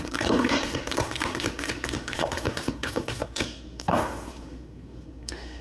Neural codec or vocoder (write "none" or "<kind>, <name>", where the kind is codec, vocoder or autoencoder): codec, SNAC